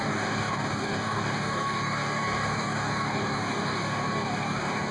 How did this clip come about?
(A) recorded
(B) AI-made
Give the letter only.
B